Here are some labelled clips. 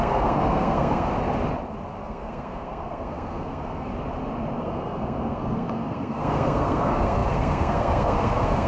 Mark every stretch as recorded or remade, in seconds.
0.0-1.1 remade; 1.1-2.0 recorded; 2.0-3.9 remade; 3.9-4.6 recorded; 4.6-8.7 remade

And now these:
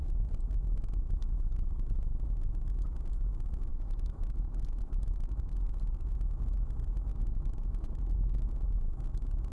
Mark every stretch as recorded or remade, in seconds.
0.0-3.7 recorded; 3.7-5.5 remade; 5.5-7.1 recorded; 7.1-8.4 remade; 8.4-9.5 recorded

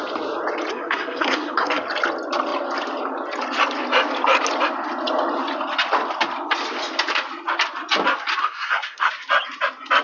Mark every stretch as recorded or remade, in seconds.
0.0-0.7 recorded; 0.7-1.8 remade; 1.8-8.4 recorded; 8.4-9.1 remade; 9.1-10.0 recorded

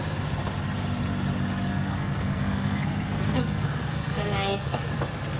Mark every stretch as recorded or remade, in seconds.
0.0-1.7 recorded; 1.7-4.9 remade; 4.9-5.4 recorded

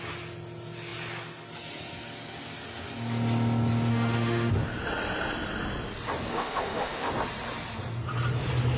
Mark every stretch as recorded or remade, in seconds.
0.0-3.9 recorded; 3.9-4.5 remade; 4.5-6.3 recorded; 6.3-7.1 remade; 7.1-8.8 recorded

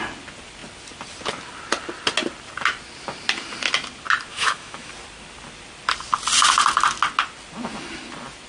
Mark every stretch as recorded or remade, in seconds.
0.0-4.3 recorded; 4.3-4.9 remade; 4.9-8.5 recorded

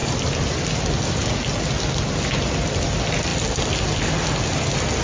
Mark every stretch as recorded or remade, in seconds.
0.0-5.0 recorded